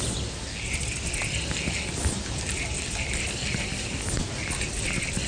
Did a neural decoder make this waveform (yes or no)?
no